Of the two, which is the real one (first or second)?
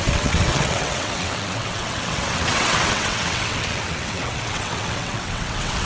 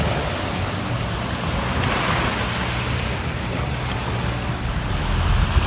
second